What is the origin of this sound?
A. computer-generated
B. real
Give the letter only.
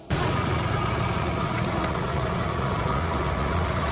A